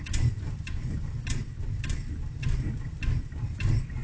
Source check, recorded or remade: recorded